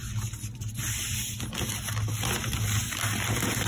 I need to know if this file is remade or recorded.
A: recorded